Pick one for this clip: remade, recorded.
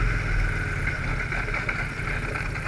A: recorded